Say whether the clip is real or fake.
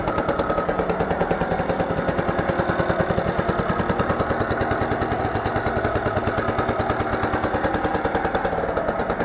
real